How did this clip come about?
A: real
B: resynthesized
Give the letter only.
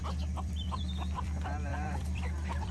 B